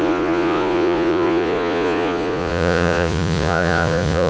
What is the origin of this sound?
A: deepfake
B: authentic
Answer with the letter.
A